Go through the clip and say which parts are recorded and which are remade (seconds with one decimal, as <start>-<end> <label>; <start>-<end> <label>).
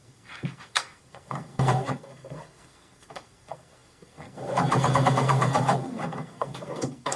0.0-7.2 remade